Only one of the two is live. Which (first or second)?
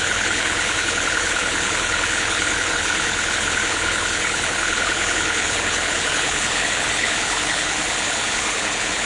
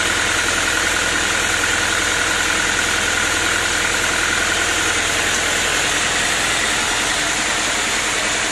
second